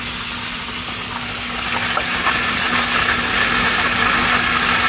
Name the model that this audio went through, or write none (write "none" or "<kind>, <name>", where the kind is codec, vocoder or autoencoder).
none